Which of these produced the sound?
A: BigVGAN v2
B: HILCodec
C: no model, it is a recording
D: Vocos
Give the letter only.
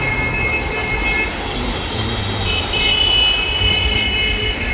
C